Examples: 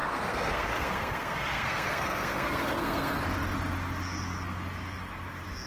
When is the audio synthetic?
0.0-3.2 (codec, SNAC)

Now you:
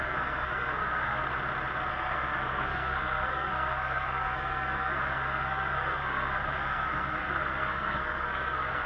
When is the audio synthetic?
0.0-1.2 (codec, SNAC); 1.9-8.9

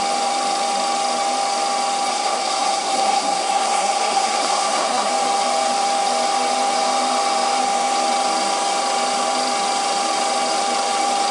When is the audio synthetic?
2.1-5.1 (codec, SNAC)

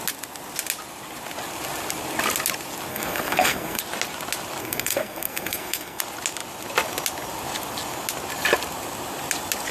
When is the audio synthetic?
2.9-3.8 (codec, SNAC); 4.6-6.0

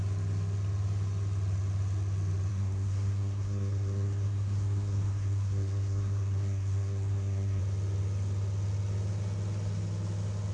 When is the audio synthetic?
2.5-7.6 (codec, SNAC)

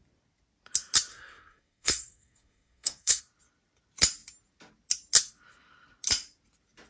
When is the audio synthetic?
1.1-3.2 (codec, SNAC)

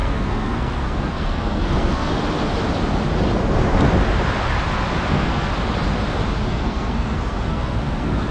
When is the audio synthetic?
0.0-2.1 (codec, SNAC); 5.1-5.5; 6.5-8.3

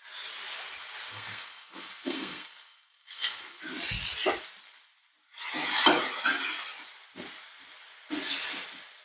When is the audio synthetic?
1.1-3.6 (codec, SNAC)